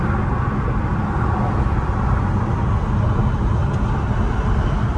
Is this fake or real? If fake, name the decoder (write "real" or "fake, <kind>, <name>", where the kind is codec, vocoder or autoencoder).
real